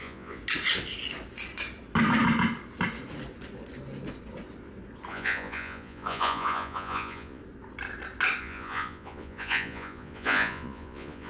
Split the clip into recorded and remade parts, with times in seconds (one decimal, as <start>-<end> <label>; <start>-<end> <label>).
0.0-0.4 remade; 0.4-5.1 recorded; 5.1-7.4 remade; 7.4-8.4 recorded; 8.4-11.3 remade